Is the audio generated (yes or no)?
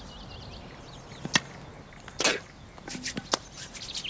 no